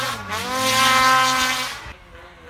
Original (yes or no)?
yes